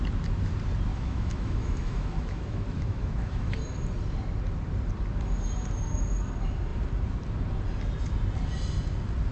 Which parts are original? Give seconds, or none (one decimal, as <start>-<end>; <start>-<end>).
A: 0.0-0.9; 3.6-9.3